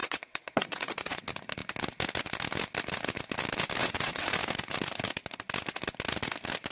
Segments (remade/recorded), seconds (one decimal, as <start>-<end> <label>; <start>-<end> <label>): 0.0-1.2 remade; 1.2-3.8 recorded; 3.8-4.3 remade; 4.3-6.7 recorded

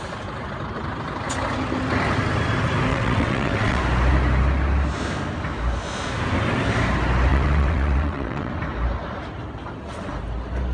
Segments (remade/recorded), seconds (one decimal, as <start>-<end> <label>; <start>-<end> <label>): 0.0-2.9 recorded; 2.9-3.8 remade; 3.8-7.3 recorded; 7.3-8.5 remade; 8.5-10.7 recorded